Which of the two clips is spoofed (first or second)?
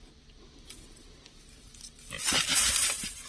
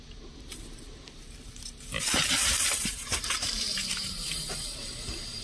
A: second